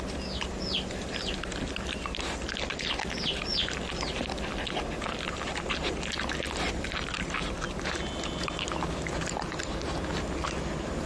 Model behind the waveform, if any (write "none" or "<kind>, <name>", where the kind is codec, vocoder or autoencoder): none